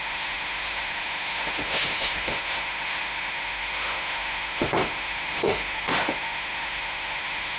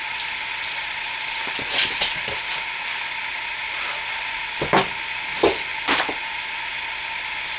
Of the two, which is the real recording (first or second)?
second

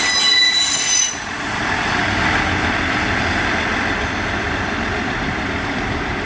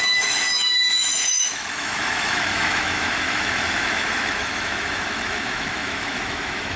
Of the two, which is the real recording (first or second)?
first